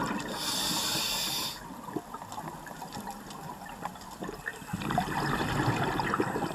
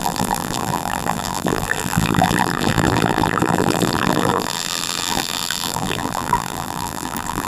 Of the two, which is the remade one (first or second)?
second